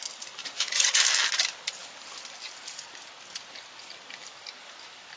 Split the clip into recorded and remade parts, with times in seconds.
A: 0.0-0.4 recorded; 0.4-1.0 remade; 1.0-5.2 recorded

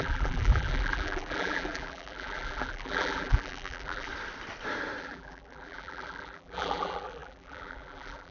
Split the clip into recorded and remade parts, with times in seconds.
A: 0.0-4.1 remade; 4.1-5.0 recorded; 5.0-8.3 remade

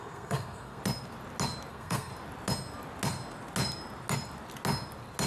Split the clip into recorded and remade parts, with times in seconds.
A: 0.0-0.8 remade; 0.8-1.7 recorded; 1.7-2.1 remade; 2.1-5.3 recorded

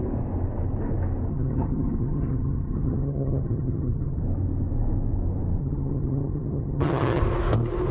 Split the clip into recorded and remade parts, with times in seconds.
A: 0.0-1.3 recorded; 1.3-4.2 remade; 4.2-5.6 recorded; 5.6-7.2 remade; 7.2-7.9 recorded

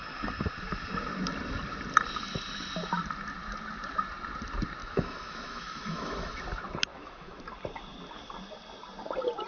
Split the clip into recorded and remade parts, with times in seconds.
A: 0.0-4.8 recorded; 4.8-6.4 remade; 6.4-6.9 recorded; 6.9-7.4 remade; 7.4-9.5 recorded

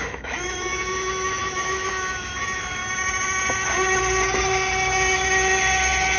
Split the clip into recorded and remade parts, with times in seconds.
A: 0.0-2.8 remade; 2.8-6.2 recorded

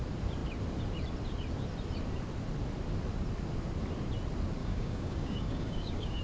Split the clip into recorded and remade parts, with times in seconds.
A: 0.0-4.6 recorded; 4.6-6.2 remade

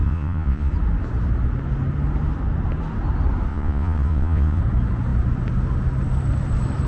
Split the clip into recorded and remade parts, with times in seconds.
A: 0.0-0.7 remade; 0.7-3.5 recorded; 3.5-4.6 remade; 4.6-6.9 recorded